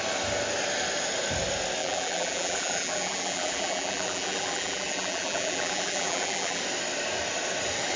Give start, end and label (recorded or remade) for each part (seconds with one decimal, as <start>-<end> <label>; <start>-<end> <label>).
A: 0.0-1.8 recorded; 1.8-6.6 remade; 6.6-8.0 recorded